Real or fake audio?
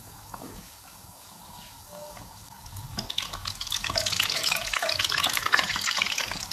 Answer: fake